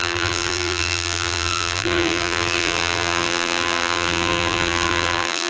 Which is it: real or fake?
fake